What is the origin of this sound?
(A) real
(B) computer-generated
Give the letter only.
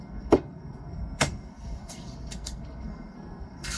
B